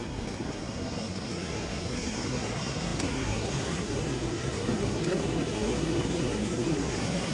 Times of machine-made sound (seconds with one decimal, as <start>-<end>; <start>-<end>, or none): 0.0-7.3